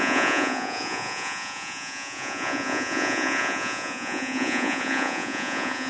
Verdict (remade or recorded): remade